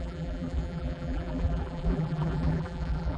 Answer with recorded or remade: remade